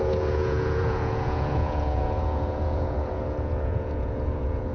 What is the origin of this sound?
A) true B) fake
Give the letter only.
B